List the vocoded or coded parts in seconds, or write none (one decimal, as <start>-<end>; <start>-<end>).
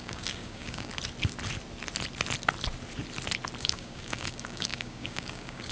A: 0.0-0.9; 3.6-5.7